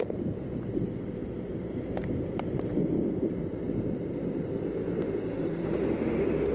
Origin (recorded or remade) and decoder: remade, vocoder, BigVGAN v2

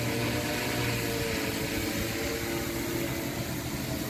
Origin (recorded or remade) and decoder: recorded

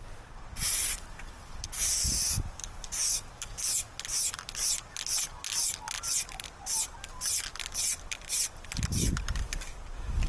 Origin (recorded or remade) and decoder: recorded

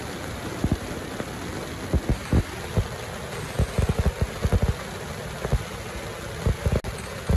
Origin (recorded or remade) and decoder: recorded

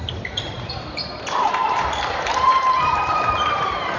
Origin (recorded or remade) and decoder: remade, vocoder, BigVGAN v2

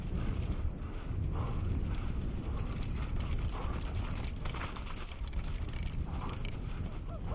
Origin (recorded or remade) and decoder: remade, vocoder, BigVGAN v2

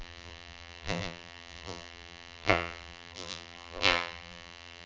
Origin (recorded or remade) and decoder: remade, vocoder, BigVGAN v2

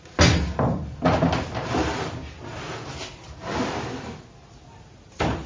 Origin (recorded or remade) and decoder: recorded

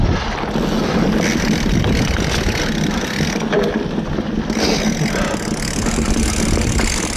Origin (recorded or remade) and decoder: recorded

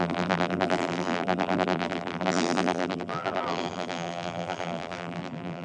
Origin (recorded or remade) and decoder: remade, vocoder, BigVGAN v2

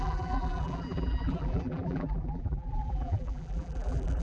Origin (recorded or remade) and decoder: remade, vocoder, BigVGAN v2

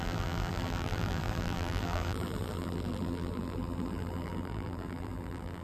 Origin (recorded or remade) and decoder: remade, vocoder, BigVGAN v2